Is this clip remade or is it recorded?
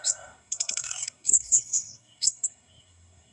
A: remade